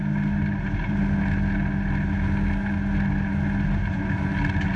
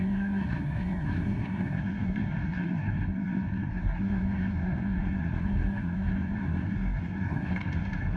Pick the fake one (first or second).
second